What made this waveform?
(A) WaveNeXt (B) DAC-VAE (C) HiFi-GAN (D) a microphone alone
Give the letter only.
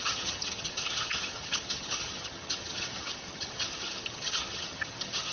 C